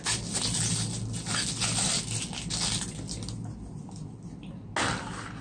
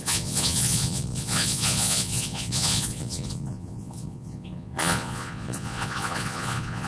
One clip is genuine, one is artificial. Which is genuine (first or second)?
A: first